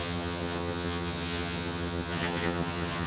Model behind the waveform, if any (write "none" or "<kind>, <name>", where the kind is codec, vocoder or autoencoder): vocoder, HiFi-GAN